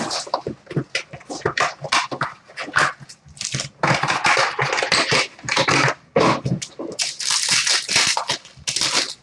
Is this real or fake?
real